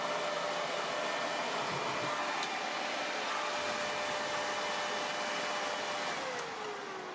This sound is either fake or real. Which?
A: real